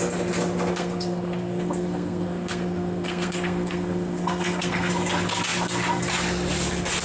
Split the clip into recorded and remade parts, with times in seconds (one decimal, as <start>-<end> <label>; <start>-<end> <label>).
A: 0.0-0.7 recorded; 0.7-4.9 remade; 4.9-7.0 recorded